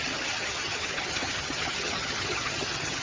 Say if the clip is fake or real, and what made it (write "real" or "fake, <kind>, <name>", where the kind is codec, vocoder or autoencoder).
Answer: fake, vocoder, HiFi-GAN